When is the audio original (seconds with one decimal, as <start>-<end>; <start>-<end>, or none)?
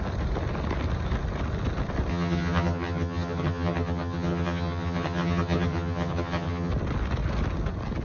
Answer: 0.0-2.1; 6.7-8.0